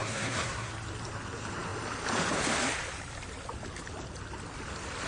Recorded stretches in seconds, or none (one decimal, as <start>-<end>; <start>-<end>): 0.7-5.1